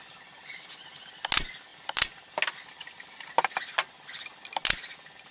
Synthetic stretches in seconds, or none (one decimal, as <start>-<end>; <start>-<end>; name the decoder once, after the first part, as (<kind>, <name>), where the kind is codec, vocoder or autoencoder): none